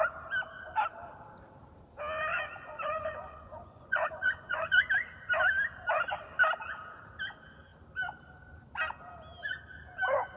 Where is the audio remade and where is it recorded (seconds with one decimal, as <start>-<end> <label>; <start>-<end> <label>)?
0.0-2.3 recorded; 2.3-4.9 remade; 4.9-10.4 recorded